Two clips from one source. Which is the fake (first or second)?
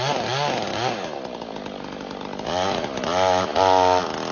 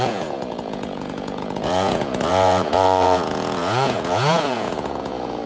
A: second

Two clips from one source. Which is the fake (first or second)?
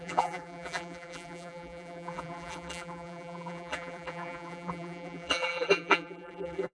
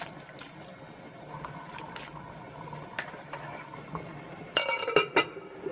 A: first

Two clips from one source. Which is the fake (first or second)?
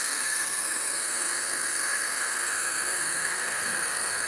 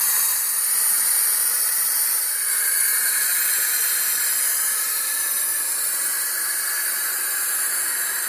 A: first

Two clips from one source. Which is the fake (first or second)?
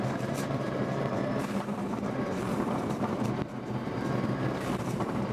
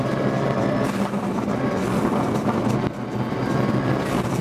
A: first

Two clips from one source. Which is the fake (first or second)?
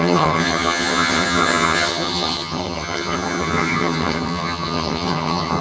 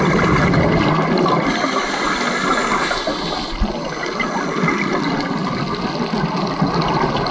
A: first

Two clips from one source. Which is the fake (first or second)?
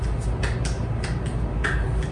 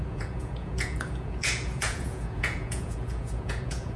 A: second